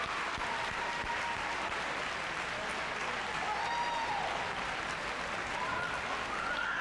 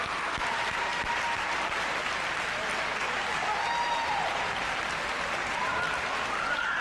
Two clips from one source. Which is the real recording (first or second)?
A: first